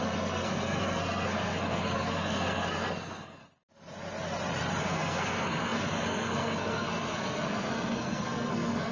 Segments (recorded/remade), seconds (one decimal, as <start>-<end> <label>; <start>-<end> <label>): 0.0-3.4 remade; 3.4-4.8 recorded; 4.8-8.9 remade